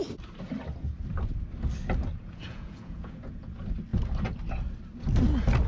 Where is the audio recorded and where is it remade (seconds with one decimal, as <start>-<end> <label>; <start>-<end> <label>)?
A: 0.0-2.0 recorded; 2.0-3.5 remade; 3.5-5.7 recorded

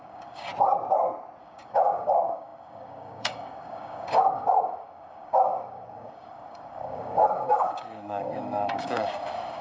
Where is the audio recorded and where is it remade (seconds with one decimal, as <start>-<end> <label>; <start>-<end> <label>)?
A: 0.0-0.5 remade; 0.5-1.4 recorded; 1.4-9.6 remade

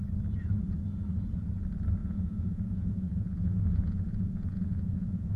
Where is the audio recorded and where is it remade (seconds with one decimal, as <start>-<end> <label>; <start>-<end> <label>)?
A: 0.0-2.0 recorded; 2.0-5.4 remade